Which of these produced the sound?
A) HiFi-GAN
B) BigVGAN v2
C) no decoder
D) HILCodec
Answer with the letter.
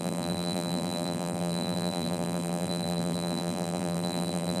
B